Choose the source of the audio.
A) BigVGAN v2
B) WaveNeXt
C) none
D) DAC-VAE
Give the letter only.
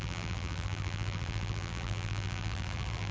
A